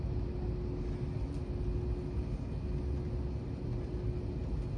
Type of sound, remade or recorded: recorded